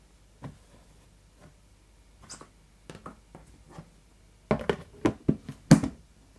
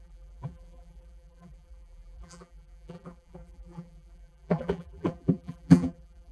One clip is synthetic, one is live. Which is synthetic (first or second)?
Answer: second